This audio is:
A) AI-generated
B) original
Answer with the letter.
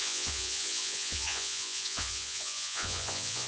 A